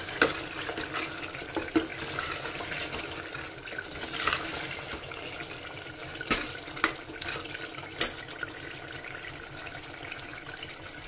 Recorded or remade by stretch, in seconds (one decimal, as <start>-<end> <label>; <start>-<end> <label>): 0.0-11.1 recorded